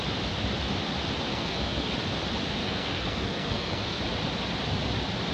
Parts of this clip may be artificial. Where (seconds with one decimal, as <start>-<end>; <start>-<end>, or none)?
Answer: 1.3-1.9; 2.6-4.0